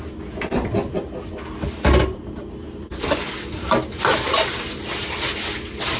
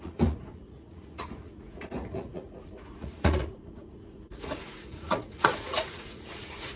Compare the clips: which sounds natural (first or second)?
first